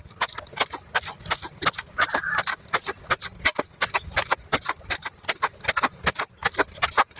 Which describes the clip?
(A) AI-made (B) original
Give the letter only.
B